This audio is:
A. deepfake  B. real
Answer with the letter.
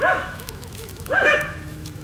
A